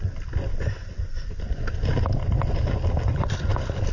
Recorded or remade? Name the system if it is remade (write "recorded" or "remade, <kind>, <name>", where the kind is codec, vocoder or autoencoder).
recorded